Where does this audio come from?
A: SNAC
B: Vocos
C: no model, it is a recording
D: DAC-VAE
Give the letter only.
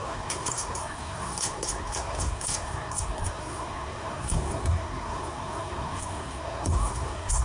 A